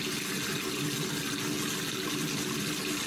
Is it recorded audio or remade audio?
recorded